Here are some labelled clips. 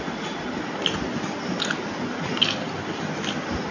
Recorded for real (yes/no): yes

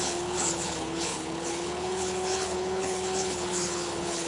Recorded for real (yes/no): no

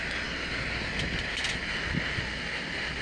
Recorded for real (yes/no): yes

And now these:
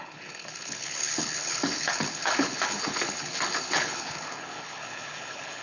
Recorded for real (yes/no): no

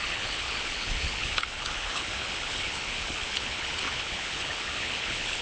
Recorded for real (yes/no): no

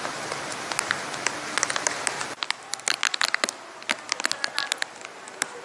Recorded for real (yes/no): yes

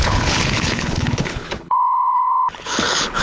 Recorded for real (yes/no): no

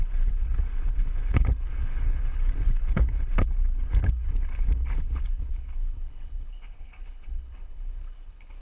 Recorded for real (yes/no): no